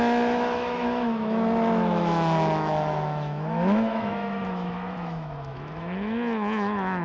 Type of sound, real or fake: fake